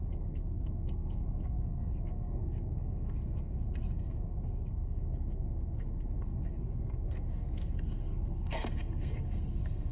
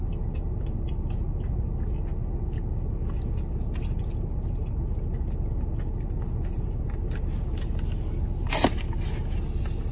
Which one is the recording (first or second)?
second